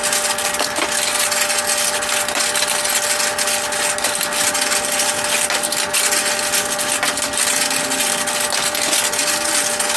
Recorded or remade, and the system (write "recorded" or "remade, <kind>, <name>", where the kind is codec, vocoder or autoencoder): recorded